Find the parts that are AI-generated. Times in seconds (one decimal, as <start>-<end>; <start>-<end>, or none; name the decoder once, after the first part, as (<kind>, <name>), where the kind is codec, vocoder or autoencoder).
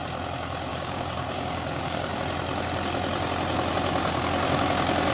0.7-2.2 (codec, DAC)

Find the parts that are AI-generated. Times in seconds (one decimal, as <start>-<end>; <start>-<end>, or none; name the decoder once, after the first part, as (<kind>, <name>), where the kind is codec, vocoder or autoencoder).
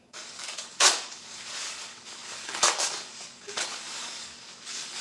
0.0-5.0 (codec, DAC)